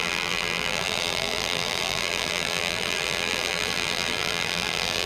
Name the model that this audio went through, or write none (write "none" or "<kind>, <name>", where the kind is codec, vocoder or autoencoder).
vocoder, BigVGAN v2